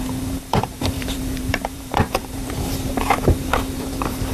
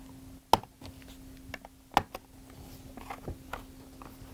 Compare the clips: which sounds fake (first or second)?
first